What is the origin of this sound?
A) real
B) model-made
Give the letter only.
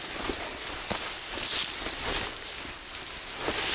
A